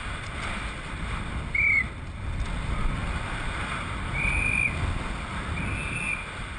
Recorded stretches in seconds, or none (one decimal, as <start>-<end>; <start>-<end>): 0.0-6.6